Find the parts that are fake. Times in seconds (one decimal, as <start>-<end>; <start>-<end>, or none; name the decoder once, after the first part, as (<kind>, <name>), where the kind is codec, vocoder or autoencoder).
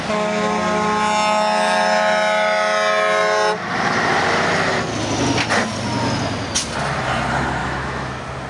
7.6-8.1 (autoencoder, DAC-VAE)